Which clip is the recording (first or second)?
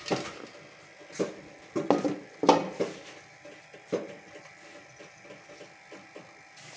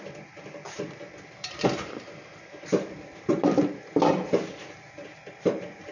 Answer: first